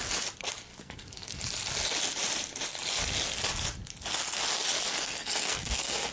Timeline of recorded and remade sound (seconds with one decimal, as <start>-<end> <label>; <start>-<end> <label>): 0.0-0.7 recorded; 0.7-1.4 remade; 1.4-4.9 recorded; 4.9-6.1 remade